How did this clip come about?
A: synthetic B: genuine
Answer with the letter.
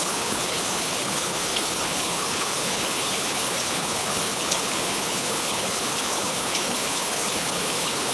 A